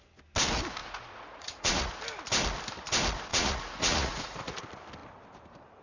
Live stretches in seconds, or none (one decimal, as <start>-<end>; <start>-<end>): 0.0-0.8; 1.9-3.3; 4.6-5.8